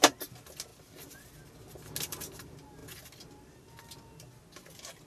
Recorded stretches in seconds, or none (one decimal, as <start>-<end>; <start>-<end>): 0.0-5.1